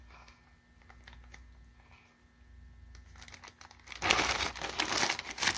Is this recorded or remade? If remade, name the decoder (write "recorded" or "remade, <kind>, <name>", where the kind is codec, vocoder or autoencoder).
recorded